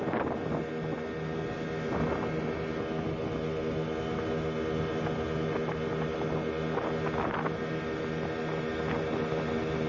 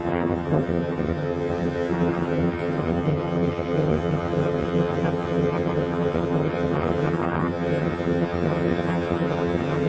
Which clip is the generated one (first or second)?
second